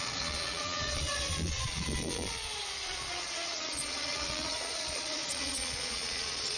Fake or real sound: fake